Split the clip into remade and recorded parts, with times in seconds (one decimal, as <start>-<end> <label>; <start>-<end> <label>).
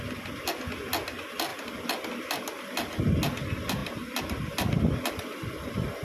0.0-6.0 recorded